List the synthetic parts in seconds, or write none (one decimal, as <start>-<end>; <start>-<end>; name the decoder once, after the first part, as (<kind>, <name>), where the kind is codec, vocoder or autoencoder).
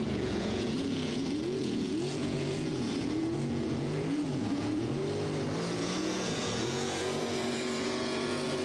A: 0.0-5.0 (vocoder, Vocos); 5.7-8.6